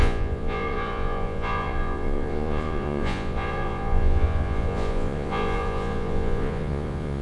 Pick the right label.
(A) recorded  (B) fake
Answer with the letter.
B